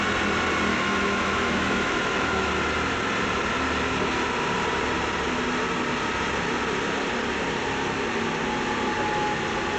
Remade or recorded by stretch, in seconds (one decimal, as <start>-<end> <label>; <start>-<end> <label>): 0.0-0.7 recorded; 0.7-2.5 remade; 2.5-9.8 recorded